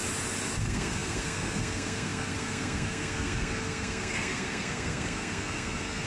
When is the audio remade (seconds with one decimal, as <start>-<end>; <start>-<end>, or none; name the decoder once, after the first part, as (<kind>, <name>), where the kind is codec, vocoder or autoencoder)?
0.6-6.1 (codec, SNAC)